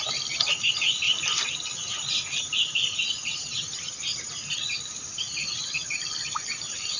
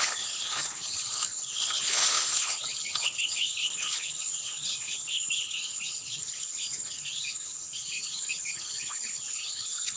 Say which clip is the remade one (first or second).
second